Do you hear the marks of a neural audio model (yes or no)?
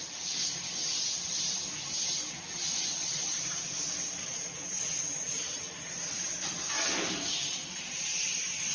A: yes